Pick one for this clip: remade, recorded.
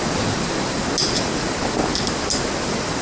recorded